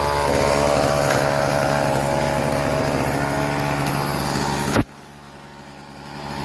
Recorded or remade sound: recorded